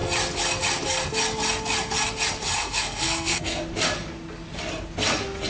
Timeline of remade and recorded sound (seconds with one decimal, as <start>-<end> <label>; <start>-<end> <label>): 0.0-2.6 recorded; 2.6-3.6 remade; 3.6-5.5 recorded